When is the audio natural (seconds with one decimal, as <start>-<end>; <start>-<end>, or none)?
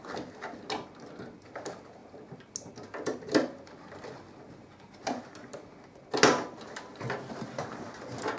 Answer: 0.0-8.4